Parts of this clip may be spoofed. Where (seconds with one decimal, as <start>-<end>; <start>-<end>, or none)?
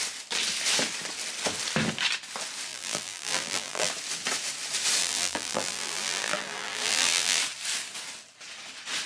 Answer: 2.7-3.9; 5.0-7.4